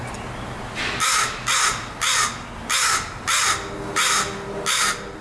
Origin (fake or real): real